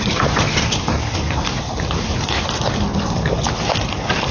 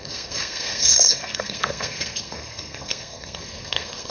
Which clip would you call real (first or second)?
first